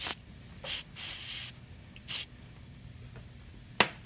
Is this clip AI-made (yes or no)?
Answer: no